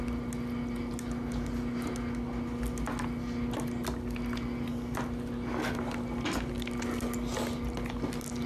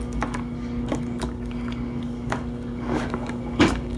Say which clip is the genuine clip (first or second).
first